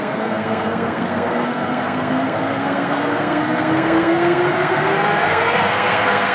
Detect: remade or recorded remade